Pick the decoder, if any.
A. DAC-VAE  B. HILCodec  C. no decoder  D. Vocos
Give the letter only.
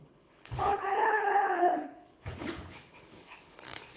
B